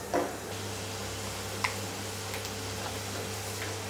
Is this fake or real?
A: real